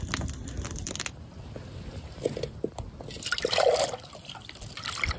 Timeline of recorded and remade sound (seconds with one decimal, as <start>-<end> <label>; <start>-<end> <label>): 0.0-0.4 recorded; 0.4-1.2 remade; 1.2-5.2 recorded